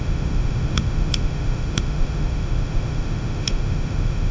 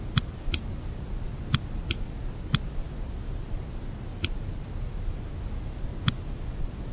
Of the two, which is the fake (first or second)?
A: first